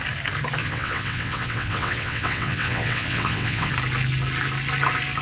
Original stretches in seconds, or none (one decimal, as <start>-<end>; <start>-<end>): 0.0-0.6; 3.7-5.2